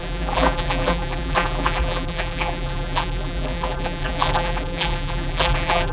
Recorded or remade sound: remade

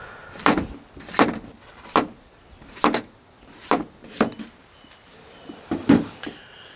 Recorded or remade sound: recorded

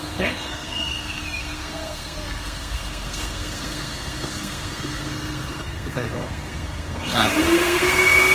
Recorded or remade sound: remade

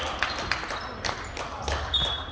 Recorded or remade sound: recorded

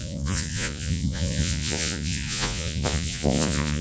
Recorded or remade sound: remade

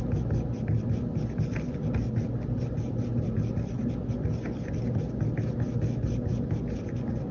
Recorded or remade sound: recorded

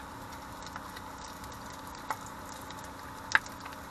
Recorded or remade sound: recorded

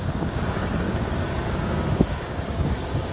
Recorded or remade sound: remade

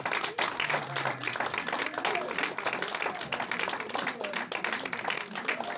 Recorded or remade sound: recorded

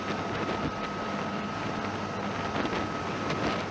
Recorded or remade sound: recorded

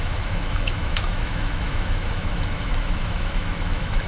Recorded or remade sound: remade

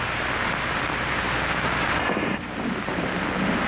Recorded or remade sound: recorded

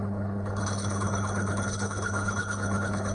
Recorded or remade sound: remade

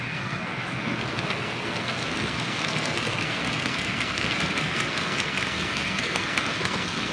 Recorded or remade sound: remade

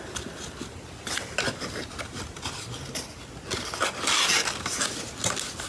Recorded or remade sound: recorded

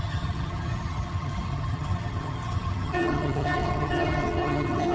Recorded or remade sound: remade